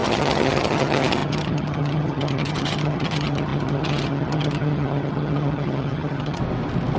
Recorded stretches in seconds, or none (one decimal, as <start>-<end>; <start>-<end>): 6.4-7.0